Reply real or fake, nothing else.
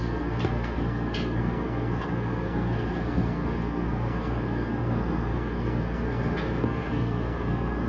fake